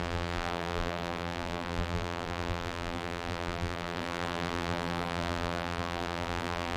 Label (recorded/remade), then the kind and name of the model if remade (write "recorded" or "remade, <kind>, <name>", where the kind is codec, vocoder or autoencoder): remade, vocoder, BigVGAN v2